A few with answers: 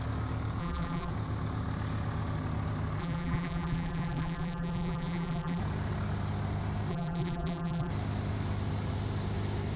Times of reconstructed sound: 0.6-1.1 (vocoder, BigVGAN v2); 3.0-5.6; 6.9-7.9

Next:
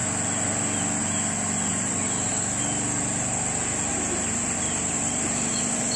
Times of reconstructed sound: 1.7-2.3 (vocoder, BigVGAN v2); 3.9-5.6